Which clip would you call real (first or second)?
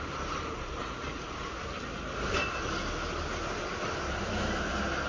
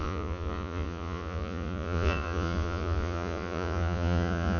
first